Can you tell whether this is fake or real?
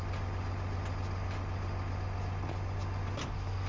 real